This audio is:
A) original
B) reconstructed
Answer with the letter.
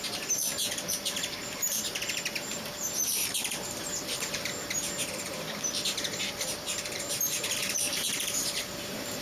B